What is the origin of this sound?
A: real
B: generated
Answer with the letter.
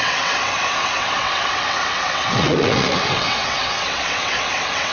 B